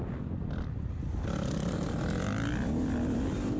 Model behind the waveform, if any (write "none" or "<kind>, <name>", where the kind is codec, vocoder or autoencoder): vocoder, BigVGAN v2